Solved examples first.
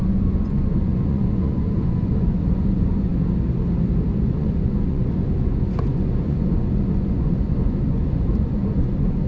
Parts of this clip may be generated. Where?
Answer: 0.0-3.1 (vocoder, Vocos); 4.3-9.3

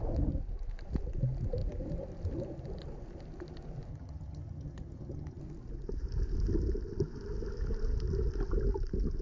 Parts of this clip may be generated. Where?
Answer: 3.9-5.4 (vocoder, HiFi-GAN)

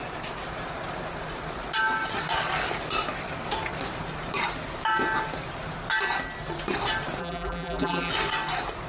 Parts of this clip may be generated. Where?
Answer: 7.2-8.1 (vocoder, BigVGAN v2)

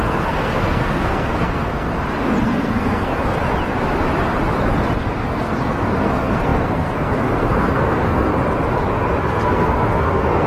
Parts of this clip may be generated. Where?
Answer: 0.0-1.9 (codec, SNAC); 2.4-3.1; 5.2-8.3; 9.2-10.5

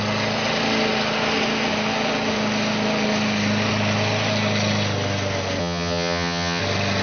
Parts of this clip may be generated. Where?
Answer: 5.6-6.6 (vocoder, HiFi-GAN)

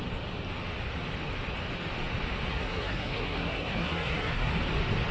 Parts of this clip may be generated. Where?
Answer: 2.5-4.5 (codec, SNAC)